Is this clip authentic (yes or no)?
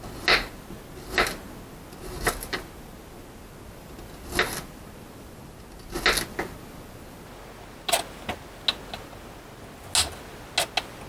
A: yes